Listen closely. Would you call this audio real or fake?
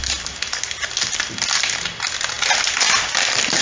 real